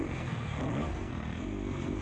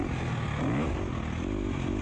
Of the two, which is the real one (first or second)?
second